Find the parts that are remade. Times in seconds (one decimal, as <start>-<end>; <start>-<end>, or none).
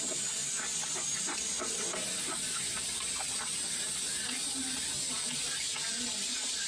none